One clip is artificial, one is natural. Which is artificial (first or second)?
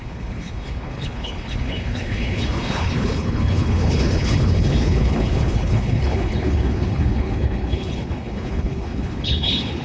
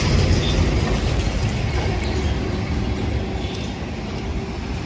first